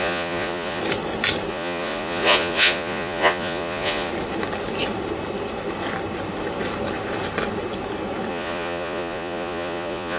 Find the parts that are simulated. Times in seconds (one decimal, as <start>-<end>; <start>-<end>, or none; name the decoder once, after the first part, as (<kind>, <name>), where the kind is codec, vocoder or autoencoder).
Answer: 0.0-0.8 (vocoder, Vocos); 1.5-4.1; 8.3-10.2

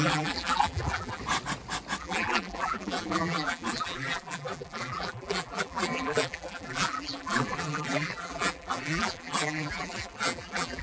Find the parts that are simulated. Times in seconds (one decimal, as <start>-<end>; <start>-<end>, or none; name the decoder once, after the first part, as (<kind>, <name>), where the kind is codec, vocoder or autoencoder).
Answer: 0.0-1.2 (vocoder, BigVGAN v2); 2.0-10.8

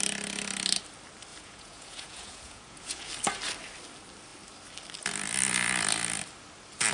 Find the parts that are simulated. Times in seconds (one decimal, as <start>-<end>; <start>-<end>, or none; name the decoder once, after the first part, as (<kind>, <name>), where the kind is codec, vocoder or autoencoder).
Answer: 1.3-3.1 (vocoder, Vocos)